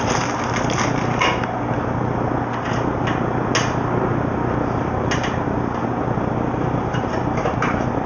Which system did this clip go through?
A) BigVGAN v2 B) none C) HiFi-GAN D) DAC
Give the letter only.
B